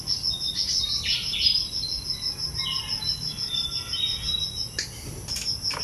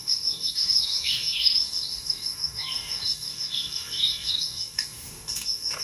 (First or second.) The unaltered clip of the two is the first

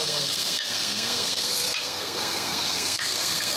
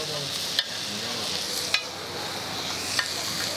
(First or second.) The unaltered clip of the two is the second